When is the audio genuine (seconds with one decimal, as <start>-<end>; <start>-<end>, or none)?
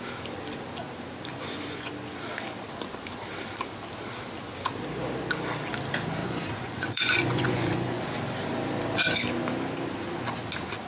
0.0-1.3; 1.9-6.2; 8.0-10.9